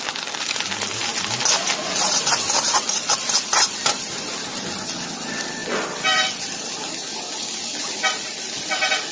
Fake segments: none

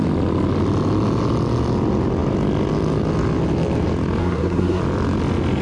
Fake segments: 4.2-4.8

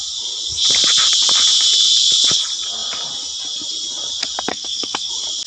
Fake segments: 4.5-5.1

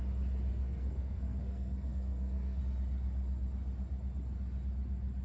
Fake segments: 0.5-2.6

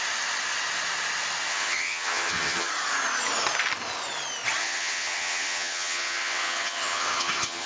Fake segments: 1.5-2.7; 4.6-7.7